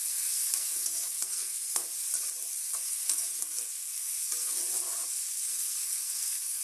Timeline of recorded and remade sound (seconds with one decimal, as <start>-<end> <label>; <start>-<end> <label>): 0.0-1.8 remade; 1.8-2.6 recorded; 2.6-4.6 remade; 4.6-5.1 recorded; 5.1-6.6 remade